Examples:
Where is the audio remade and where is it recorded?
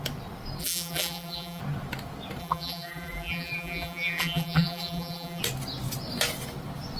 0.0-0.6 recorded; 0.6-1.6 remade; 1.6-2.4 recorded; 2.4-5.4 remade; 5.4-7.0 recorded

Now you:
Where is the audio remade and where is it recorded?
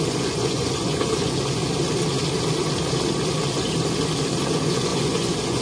0.0-1.6 remade; 1.6-4.5 recorded; 4.5-5.6 remade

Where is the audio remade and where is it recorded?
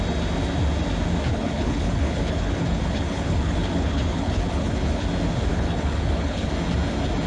0.0-1.3 recorded; 1.3-5.0 remade; 5.0-5.5 recorded; 5.5-6.5 remade; 6.5-7.3 recorded